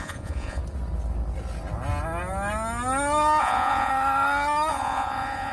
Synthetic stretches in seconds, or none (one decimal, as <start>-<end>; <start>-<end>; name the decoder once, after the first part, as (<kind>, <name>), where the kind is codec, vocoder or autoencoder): 0.0-0.6 (vocoder, Vocos); 3.4-3.9; 4.7-5.5